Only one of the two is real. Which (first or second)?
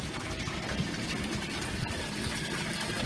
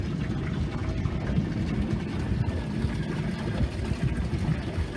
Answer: second